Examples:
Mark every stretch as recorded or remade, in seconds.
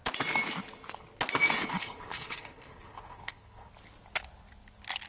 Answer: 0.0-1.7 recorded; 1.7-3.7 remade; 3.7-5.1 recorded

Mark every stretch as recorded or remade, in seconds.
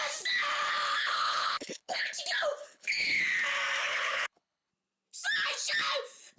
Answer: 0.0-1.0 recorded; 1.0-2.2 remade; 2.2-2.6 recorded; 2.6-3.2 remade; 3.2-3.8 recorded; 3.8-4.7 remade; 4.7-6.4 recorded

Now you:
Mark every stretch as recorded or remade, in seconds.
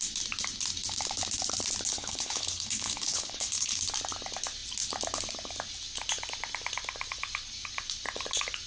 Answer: 0.0-1.9 recorded; 1.9-3.8 remade; 3.8-8.7 recorded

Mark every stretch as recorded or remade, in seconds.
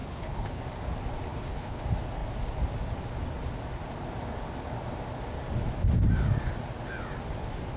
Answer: 0.0-0.6 remade; 0.6-1.3 recorded; 1.3-1.8 remade; 1.8-7.8 recorded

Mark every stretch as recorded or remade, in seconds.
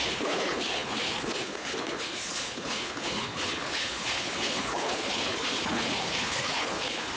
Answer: 0.0-7.2 remade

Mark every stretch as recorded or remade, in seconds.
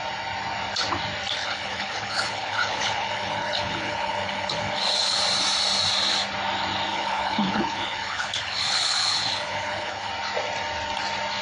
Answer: 0.0-1.4 recorded; 1.4-5.2 remade; 5.2-6.9 recorded; 6.9-10.1 remade; 10.1-11.4 recorded